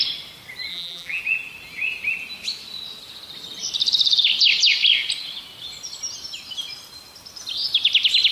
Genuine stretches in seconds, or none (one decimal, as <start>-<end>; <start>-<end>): 0.0-0.7; 1.2-8.3